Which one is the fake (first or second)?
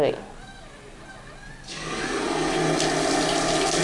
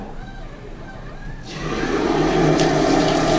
second